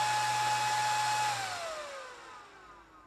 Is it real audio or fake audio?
real